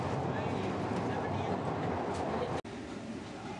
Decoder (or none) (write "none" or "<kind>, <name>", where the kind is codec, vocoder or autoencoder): none